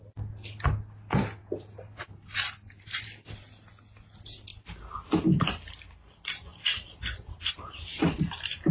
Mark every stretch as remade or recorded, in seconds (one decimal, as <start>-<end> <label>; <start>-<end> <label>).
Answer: 0.0-1.4 recorded; 1.4-3.4 remade; 3.4-6.5 recorded; 6.5-7.9 remade; 7.9-8.7 recorded